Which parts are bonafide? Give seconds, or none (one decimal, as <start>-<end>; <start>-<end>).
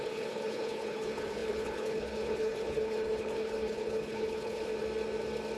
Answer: 4.7-5.6